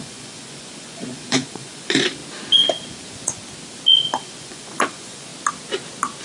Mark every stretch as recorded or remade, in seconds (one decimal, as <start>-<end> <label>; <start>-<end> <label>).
0.0-2.2 remade; 2.2-2.9 recorded; 2.9-3.4 remade; 3.4-4.2 recorded; 4.2-5.3 remade; 5.3-6.2 recorded